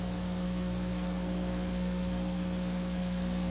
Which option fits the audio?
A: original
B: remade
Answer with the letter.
B